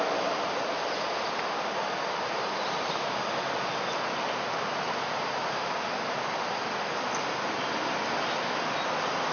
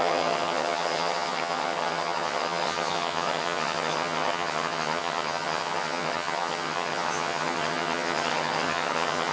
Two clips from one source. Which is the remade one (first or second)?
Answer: second